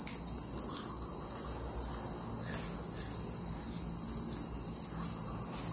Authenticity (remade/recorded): recorded